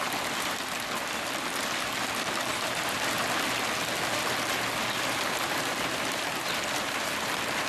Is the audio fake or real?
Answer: fake